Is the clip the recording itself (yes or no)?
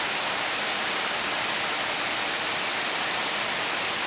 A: yes